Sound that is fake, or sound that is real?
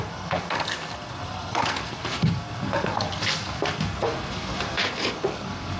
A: fake